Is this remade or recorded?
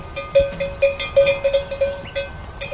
recorded